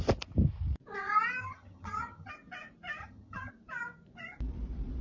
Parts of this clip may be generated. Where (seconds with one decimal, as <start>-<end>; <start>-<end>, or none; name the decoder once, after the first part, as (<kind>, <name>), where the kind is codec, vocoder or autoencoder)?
1.4-2.3 (vocoder, HiFi-GAN); 3.0-3.5